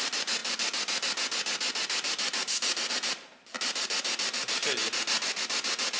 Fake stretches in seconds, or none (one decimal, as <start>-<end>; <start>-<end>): none